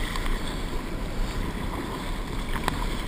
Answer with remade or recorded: recorded